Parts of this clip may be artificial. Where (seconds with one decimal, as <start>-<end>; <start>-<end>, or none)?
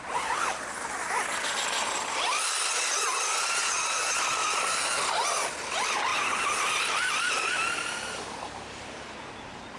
none